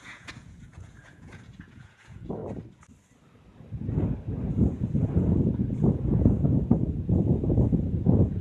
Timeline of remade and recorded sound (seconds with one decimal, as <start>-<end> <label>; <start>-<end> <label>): 0.0-2.4 remade; 2.4-4.5 recorded; 4.5-8.4 remade